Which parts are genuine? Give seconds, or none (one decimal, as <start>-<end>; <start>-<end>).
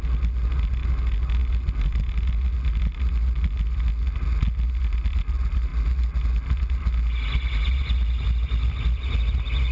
0.0-9.7